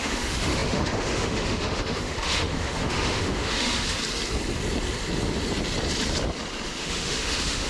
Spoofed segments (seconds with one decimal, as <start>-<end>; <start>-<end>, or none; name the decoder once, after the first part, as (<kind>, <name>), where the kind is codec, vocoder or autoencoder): 0.0-4.0 (autoencoder, DAC-VAE); 6.8-7.7